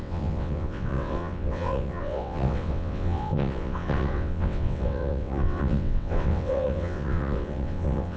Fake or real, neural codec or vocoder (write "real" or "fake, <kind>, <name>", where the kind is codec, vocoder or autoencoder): fake, vocoder, WaveNeXt